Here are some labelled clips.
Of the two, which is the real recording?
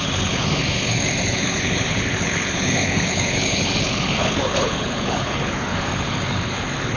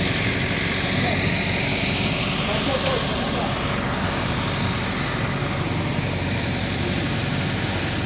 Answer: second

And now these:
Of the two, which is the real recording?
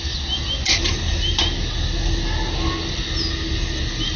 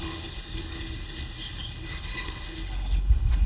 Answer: first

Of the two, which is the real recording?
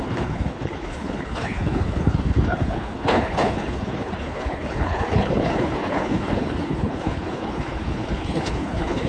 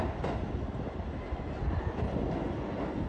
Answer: second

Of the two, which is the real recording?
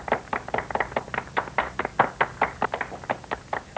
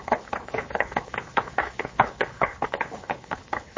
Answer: first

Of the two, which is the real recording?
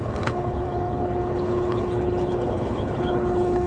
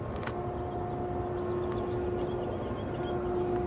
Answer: second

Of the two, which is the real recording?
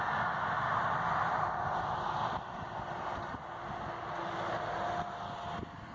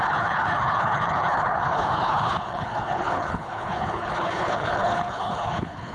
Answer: first